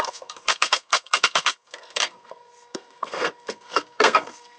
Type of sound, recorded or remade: remade